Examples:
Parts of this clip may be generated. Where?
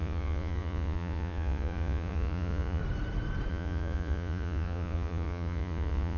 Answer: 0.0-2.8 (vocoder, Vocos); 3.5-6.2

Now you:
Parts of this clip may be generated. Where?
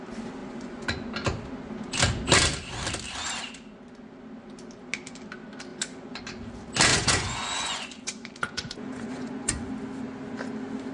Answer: 0.4-1.1 (vocoder, Vocos); 5.7-6.2; 6.9-9.7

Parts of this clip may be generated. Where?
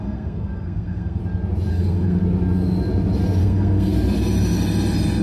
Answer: 0.0-1.2 (codec, SNAC); 1.7-2.2; 3.4-3.9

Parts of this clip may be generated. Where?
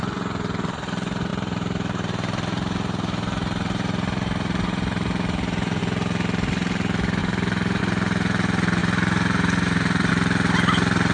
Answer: 1.3-5.8 (vocoder, BigVGAN v2); 7.2-7.8; 8.8-10.1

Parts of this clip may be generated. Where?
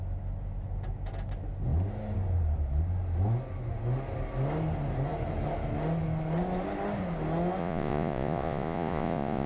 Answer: 7.6-9.5 (vocoder, Vocos)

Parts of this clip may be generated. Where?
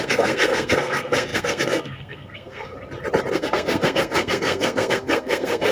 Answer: 0.0-2.7 (codec, SNAC); 3.3-5.7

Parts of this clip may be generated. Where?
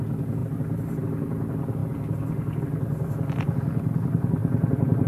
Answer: none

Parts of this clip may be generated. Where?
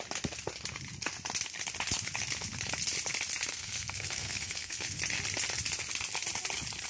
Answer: 3.5-5.0 (codec, SNAC)